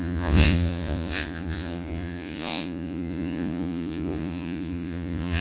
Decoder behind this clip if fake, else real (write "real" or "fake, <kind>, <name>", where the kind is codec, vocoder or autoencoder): fake, vocoder, Vocos